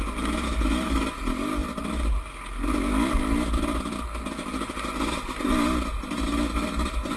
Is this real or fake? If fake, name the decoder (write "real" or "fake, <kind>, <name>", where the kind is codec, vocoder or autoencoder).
real